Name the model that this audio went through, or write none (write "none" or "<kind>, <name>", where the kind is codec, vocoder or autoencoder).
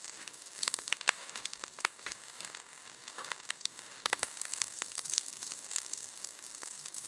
codec, DAC